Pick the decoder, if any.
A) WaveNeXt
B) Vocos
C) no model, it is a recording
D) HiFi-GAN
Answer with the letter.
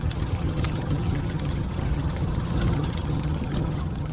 D